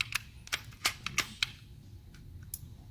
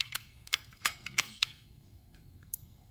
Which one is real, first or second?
first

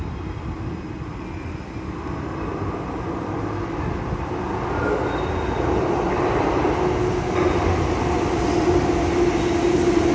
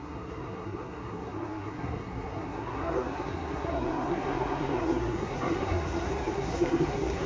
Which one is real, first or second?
first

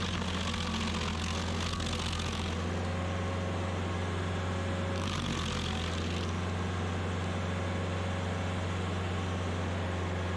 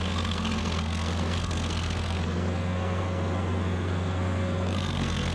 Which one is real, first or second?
first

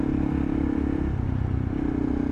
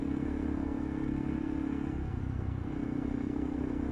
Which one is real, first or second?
first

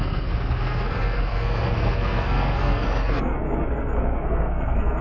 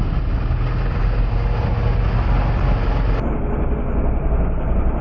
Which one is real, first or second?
second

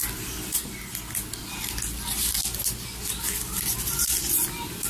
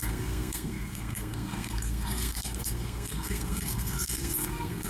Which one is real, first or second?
first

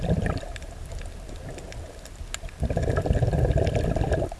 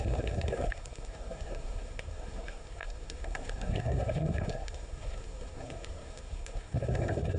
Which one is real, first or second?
first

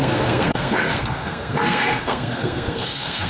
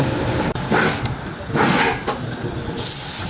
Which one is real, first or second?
second